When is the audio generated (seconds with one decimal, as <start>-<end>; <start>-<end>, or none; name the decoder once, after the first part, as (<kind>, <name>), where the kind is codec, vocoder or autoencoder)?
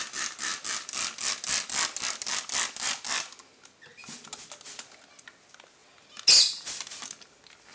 none